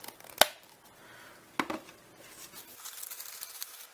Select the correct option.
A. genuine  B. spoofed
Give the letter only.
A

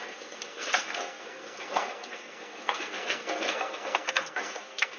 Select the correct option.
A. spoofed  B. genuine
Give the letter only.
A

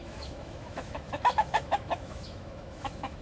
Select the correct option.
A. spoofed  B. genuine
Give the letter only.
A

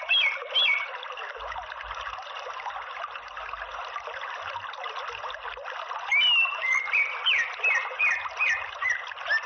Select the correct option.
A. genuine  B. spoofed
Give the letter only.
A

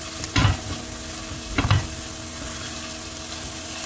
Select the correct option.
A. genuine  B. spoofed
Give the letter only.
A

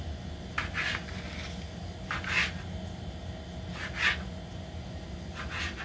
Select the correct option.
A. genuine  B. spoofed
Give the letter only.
A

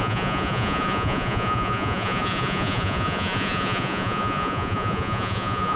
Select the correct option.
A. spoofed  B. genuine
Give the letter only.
A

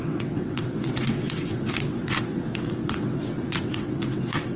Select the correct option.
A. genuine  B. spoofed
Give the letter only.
B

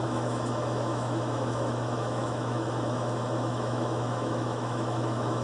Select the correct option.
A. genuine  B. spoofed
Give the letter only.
B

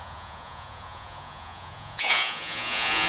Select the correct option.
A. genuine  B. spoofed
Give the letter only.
B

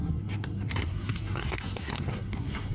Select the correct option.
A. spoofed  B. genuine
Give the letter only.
A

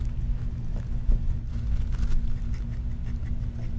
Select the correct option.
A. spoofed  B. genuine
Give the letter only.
B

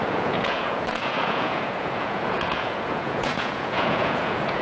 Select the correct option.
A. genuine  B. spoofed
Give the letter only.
B